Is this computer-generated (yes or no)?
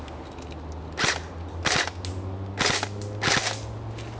no